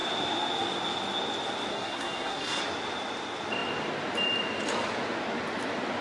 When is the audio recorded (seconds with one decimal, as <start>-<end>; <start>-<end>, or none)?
0.0-1.7; 2.6-6.0

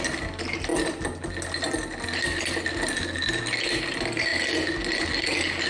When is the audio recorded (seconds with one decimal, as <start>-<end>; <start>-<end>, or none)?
0.0-5.7

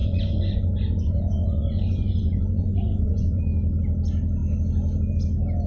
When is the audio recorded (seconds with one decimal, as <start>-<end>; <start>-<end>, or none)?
3.4-5.7